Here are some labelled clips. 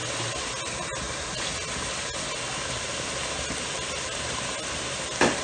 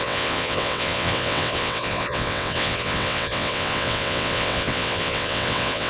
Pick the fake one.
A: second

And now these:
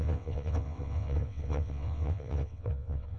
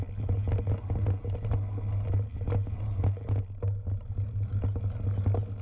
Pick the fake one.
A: first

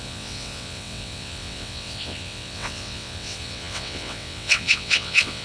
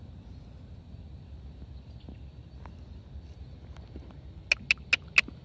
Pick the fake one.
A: first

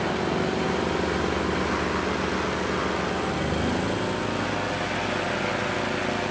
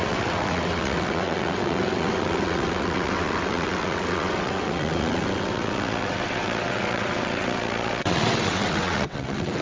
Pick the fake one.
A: second